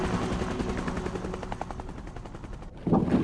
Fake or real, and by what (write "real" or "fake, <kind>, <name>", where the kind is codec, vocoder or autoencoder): real